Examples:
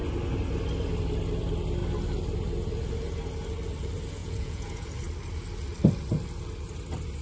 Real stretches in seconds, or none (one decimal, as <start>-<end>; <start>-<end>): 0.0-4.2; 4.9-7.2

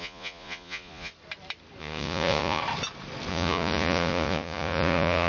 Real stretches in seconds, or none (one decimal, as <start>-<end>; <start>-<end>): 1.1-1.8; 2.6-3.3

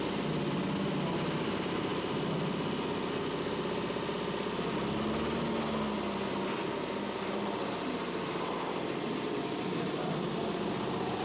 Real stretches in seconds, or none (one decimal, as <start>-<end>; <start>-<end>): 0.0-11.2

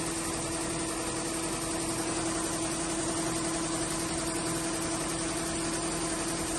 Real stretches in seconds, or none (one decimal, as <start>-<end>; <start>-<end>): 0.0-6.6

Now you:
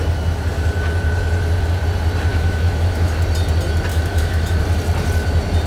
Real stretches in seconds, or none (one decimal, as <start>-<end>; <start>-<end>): 0.0-2.3; 3.1-3.9; 4.6-5.7

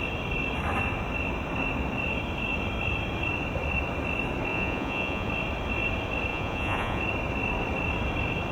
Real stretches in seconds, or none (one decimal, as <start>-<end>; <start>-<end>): 0.0-4.5; 5.3-6.3; 7.0-8.5

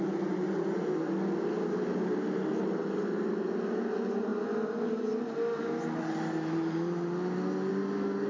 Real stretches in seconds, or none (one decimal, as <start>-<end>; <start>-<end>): 0.0-8.3